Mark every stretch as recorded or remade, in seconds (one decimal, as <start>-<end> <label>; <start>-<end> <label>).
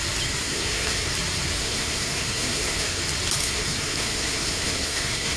0.0-0.4 recorded; 0.4-1.1 remade; 1.1-1.6 recorded; 1.6-3.0 remade; 3.0-3.4 recorded; 3.4-5.4 remade